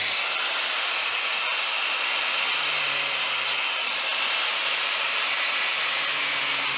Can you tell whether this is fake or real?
real